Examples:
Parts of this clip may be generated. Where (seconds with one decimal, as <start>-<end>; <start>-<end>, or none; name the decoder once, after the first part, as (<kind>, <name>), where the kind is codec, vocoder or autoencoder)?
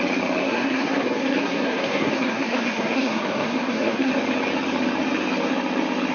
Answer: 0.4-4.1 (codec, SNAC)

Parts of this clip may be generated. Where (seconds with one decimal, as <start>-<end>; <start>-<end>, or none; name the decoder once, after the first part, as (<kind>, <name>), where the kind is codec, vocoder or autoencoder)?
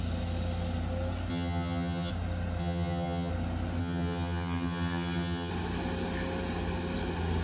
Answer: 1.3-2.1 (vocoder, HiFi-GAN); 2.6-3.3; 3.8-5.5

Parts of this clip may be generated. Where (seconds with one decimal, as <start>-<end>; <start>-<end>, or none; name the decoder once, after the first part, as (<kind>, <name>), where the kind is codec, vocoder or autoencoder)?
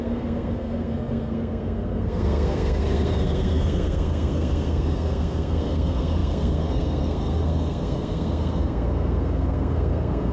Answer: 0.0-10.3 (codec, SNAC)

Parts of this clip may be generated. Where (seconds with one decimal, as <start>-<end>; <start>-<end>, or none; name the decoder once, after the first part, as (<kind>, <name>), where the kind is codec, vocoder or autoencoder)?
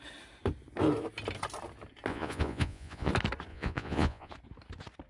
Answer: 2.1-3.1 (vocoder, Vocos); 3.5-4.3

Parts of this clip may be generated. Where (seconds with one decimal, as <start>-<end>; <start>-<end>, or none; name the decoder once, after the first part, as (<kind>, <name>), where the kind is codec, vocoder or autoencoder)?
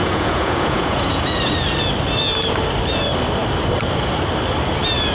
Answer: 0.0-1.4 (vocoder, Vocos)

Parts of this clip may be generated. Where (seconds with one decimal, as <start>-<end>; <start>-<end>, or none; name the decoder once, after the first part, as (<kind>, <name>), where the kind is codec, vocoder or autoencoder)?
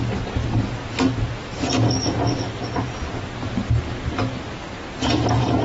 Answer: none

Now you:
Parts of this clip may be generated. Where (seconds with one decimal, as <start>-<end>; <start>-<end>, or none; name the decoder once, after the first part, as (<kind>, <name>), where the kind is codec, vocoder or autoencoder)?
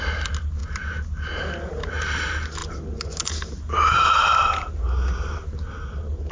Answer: none